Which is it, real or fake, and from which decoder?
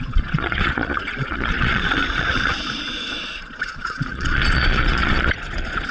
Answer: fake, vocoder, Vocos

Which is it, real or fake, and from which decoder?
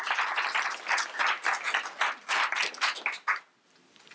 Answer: real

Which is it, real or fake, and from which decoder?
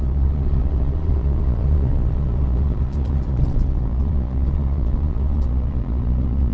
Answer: fake, vocoder, Vocos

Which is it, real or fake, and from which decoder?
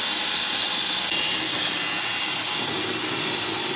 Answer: real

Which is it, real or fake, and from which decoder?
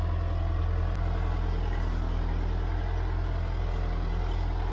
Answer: real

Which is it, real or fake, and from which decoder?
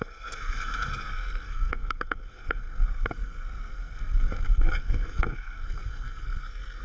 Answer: fake, codec, SNAC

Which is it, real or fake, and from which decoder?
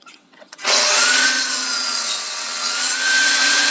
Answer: fake, vocoder, WaveNeXt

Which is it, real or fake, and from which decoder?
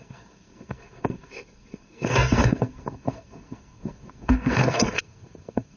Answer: fake, codec, SNAC